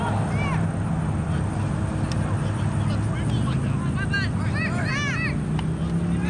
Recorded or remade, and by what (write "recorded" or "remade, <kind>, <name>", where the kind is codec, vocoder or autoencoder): recorded